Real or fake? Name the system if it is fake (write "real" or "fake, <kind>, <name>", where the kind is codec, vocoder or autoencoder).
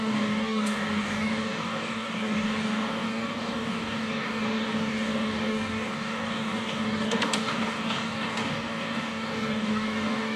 fake, codec, DAC